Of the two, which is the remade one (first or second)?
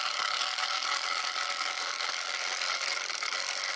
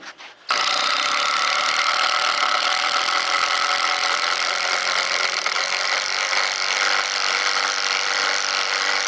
first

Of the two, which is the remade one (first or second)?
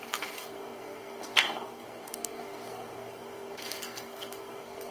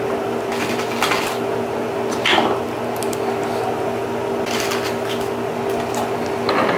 first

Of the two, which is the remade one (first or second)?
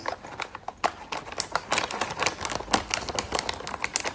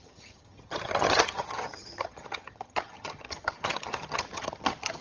second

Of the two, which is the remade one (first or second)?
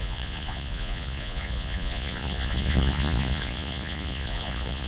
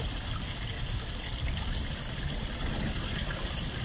first